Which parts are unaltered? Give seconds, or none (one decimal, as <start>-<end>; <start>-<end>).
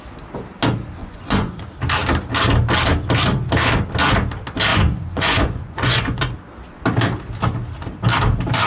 0.0-1.0; 1.6-4.7; 6.4-8.7